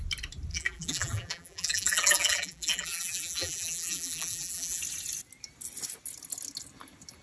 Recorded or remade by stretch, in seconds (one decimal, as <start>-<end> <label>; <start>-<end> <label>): 0.0-0.5 recorded; 0.5-4.8 remade; 4.8-7.2 recorded